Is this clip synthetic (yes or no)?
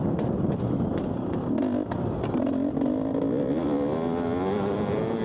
no